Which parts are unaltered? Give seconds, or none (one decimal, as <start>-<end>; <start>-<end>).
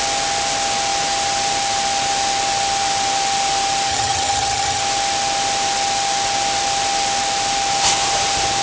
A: 0.0-3.9; 4.8-8.6